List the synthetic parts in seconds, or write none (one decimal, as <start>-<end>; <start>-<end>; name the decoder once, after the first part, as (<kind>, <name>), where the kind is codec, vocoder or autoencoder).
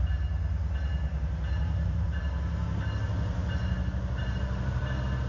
1.1-2.2 (vocoder, BigVGAN v2); 4.2-4.8